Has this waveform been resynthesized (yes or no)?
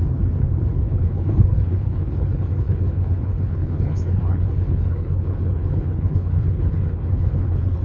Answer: yes